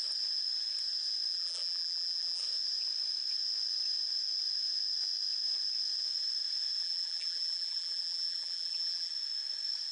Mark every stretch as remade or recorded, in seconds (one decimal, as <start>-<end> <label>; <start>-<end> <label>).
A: 0.0-1.3 recorded; 1.3-2.4 remade; 2.4-6.8 recorded; 6.8-9.1 remade; 9.1-9.9 recorded